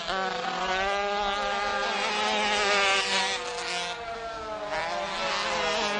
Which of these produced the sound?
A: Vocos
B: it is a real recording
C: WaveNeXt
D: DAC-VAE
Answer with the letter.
B